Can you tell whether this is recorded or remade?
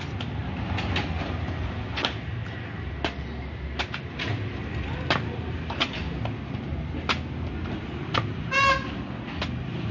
recorded